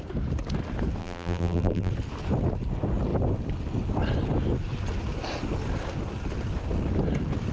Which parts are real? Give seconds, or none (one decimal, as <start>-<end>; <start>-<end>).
0.0-1.0; 1.9-7.5